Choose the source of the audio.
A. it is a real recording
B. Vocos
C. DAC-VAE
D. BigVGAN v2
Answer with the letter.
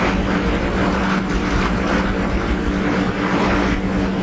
A